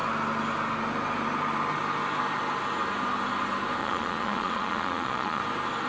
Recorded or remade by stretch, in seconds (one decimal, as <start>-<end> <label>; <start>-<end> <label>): 0.0-3.8 recorded; 3.8-5.4 remade; 5.4-5.9 recorded